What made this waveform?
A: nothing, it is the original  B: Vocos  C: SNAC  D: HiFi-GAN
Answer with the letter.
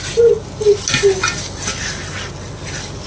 A